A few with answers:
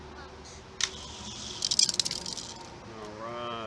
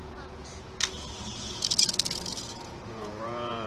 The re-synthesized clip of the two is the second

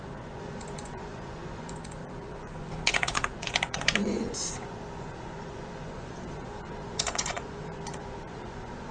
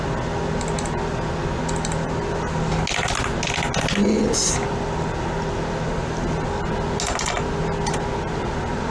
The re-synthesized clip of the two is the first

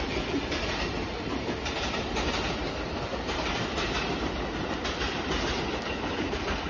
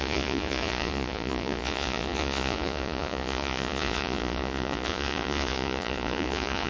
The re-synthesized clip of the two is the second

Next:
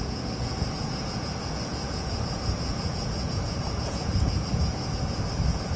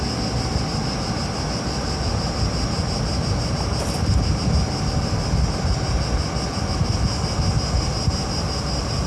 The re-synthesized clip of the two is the first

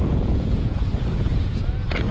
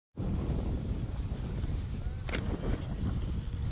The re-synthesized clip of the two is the first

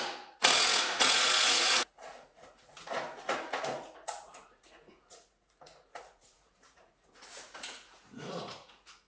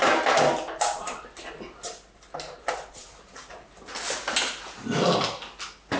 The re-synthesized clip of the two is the first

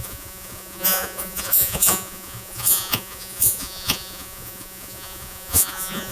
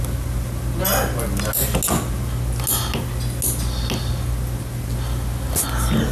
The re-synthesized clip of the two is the first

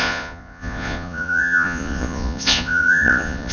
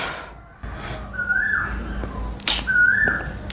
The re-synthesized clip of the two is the first